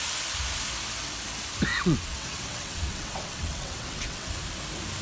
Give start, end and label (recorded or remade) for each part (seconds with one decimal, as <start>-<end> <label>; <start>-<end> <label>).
0.0-1.7 recorded; 1.7-4.3 remade; 4.3-5.0 recorded